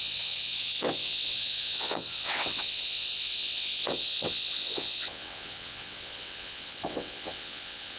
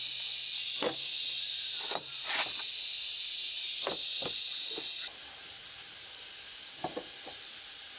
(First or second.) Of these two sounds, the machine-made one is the first